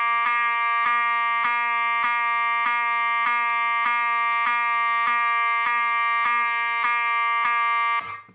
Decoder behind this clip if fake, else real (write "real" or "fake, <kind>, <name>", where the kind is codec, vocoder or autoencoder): real